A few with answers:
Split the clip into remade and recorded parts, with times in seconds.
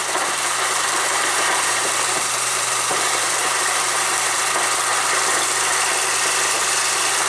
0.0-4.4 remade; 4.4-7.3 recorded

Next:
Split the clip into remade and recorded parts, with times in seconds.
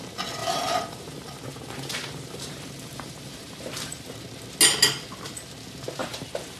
0.0-0.4 recorded; 0.4-4.1 remade; 4.1-6.0 recorded; 6.0-6.6 remade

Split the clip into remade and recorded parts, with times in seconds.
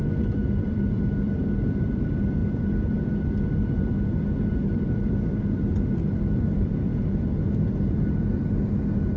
0.0-9.2 remade